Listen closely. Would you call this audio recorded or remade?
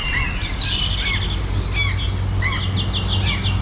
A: recorded